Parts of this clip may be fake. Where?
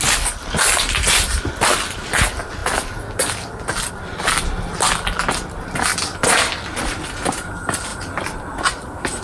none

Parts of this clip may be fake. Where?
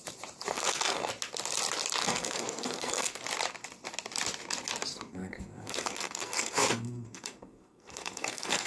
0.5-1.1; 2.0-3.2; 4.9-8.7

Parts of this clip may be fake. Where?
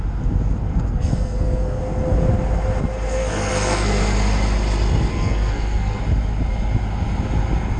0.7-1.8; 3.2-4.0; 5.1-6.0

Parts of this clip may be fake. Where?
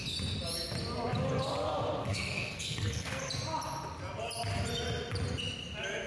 2.0-3.2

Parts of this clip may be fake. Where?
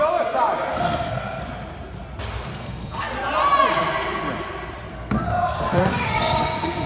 0.7-1.4; 2.5-3.1; 4.9-6.9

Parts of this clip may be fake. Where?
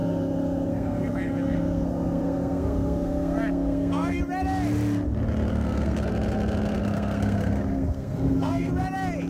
0.0-4.2; 5.5-6.1; 6.8-8.7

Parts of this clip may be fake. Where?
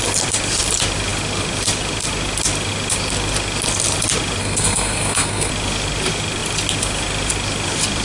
4.4-5.5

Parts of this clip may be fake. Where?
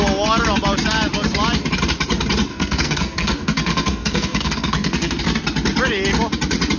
2.5-5.2